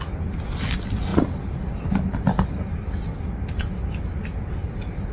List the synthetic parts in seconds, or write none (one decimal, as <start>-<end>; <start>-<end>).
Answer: none